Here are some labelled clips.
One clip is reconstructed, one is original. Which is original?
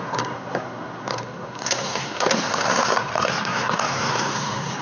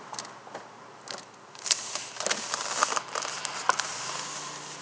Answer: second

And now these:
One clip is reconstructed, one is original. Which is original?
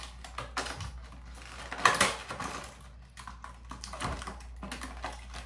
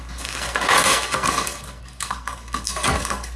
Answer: first